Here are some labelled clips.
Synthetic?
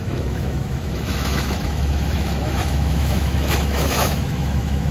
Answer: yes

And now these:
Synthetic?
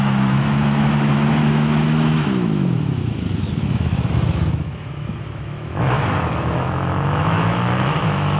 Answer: yes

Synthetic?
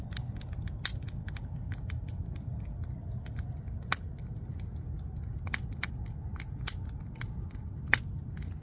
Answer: no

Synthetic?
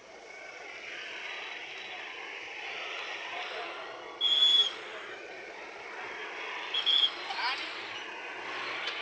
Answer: no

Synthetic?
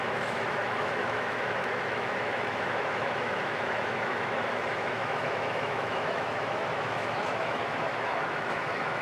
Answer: yes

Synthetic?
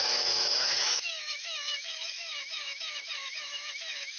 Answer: yes